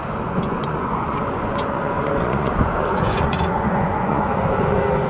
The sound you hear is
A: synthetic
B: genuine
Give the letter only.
A